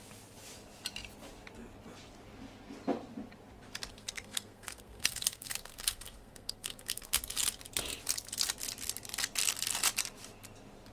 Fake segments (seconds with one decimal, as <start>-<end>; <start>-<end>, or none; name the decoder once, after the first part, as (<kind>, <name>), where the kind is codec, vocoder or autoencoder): 3.9-7.2 (codec, SNAC)